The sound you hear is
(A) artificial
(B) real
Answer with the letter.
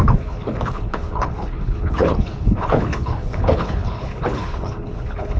A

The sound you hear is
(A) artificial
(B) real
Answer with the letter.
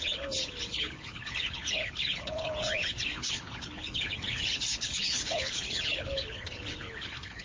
A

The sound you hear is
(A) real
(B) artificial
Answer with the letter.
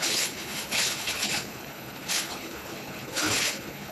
B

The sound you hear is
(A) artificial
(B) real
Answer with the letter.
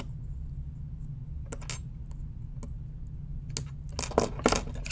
B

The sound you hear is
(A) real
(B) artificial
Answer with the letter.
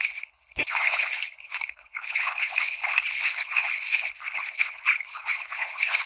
B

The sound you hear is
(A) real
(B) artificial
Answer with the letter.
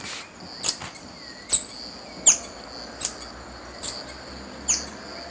A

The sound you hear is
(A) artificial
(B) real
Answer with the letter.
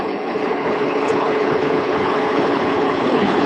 A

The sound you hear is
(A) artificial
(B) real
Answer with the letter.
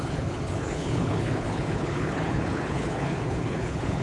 A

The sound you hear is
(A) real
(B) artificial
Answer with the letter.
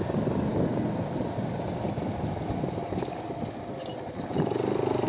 A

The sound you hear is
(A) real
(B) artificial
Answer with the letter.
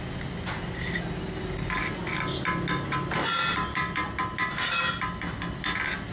A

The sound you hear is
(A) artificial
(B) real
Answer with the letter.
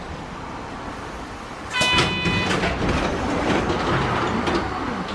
B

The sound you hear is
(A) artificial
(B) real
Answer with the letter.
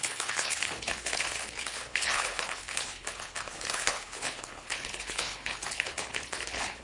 A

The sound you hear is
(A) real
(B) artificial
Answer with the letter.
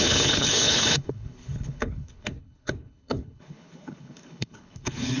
B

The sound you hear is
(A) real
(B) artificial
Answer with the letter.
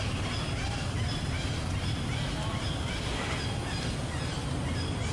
A